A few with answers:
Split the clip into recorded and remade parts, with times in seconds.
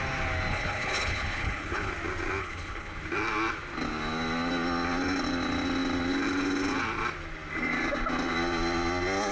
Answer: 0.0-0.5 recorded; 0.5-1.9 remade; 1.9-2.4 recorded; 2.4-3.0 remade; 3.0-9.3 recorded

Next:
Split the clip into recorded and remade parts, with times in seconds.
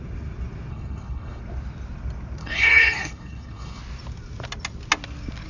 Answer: 0.0-0.7 recorded; 0.7-1.4 remade; 1.4-2.4 recorded; 2.4-3.8 remade; 3.8-5.5 recorded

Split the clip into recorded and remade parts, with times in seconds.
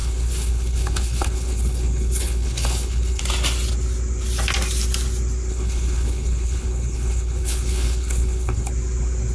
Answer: 0.0-3.2 remade; 3.2-5.5 recorded; 5.5-8.7 remade; 8.7-9.3 recorded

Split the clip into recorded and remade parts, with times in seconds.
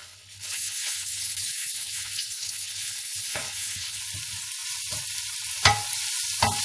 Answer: 0.0-4.0 remade; 4.0-6.6 recorded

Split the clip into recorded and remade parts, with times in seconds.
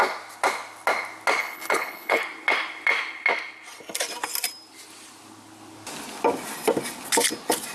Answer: 0.0-1.4 recorded; 1.4-2.2 remade; 2.2-7.7 recorded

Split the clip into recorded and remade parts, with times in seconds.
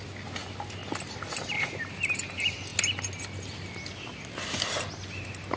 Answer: 0.0-5.6 recorded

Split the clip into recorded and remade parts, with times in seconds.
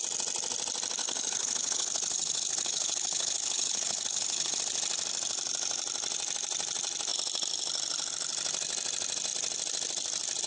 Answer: 0.0-1.0 recorded; 1.0-4.6 remade; 4.6-10.5 recorded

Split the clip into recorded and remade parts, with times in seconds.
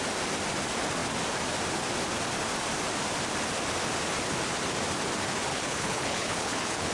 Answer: 0.0-5.5 recorded; 5.5-6.9 remade